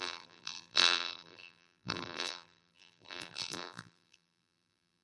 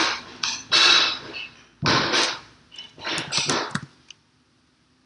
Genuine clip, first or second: second